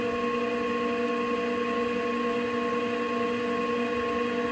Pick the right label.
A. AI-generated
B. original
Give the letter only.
B